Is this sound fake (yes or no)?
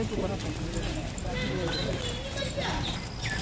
no